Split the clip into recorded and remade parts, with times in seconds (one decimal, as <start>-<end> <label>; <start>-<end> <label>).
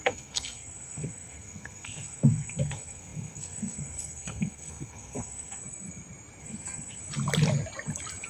0.0-5.6 remade; 5.6-6.4 recorded; 6.4-7.0 remade; 7.0-8.3 recorded